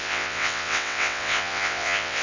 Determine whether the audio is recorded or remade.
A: remade